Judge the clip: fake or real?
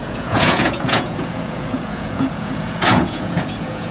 fake